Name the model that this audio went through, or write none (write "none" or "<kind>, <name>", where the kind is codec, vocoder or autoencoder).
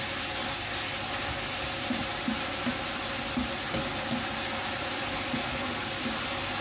none